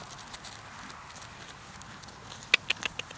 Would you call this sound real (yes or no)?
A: yes